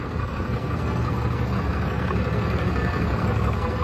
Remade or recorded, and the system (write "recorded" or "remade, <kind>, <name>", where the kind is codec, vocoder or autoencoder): remade, codec, SNAC